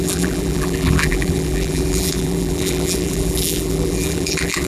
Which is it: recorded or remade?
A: remade